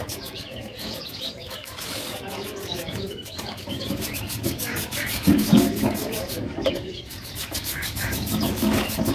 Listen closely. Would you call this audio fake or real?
fake